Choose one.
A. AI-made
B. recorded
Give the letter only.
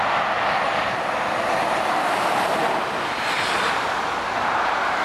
B